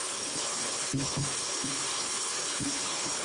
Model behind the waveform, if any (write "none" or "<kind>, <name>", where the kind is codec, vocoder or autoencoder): codec, HILCodec